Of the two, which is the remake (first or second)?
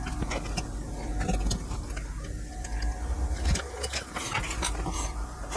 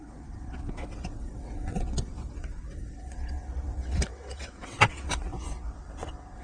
second